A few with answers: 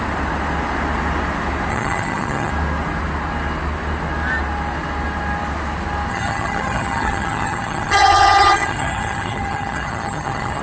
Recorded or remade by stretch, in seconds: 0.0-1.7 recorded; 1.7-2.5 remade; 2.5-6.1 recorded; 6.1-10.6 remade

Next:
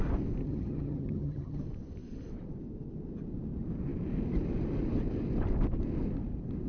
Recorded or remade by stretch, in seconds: 0.0-0.4 recorded; 0.4-1.6 remade; 1.6-6.7 recorded

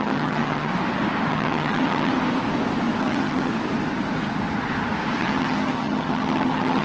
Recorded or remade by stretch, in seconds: 0.0-0.7 remade; 0.7-1.3 recorded; 1.3-2.1 remade; 2.1-3.0 recorded; 3.0-3.5 remade; 3.5-5.2 recorded; 5.2-6.8 remade

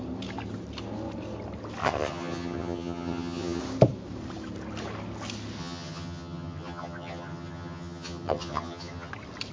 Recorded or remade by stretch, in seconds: 0.0-1.8 recorded; 1.8-3.6 remade; 3.6-5.6 recorded; 5.6-9.1 remade; 9.1-9.5 recorded